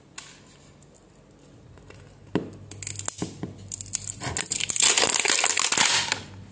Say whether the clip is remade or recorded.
recorded